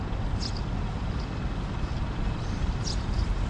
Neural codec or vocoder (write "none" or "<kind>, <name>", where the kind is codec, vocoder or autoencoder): none